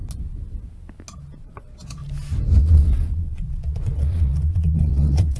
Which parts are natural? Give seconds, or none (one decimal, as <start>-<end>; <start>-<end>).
0.0-1.4; 2.0-2.6